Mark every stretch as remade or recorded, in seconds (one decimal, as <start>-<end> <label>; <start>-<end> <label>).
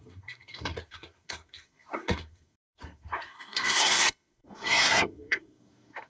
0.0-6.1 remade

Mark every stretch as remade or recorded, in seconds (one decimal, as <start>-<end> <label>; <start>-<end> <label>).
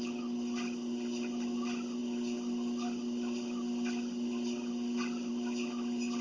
0.0-6.2 recorded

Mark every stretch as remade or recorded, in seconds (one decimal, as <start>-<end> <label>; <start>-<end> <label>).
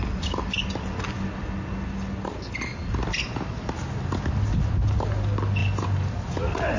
0.0-6.8 recorded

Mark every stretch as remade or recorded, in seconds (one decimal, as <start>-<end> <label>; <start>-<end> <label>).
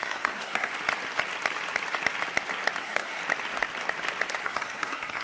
0.0-0.7 remade; 0.7-2.8 recorded; 2.8-3.2 remade; 3.2-4.4 recorded; 4.4-5.2 remade